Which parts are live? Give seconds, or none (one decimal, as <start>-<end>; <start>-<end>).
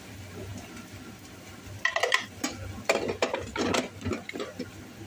0.0-5.1